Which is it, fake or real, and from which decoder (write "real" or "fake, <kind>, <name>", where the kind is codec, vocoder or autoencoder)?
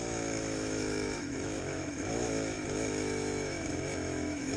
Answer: fake, autoencoder, DAC-VAE